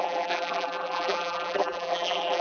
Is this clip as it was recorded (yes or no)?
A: no